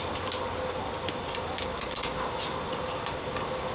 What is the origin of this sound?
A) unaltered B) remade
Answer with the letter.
A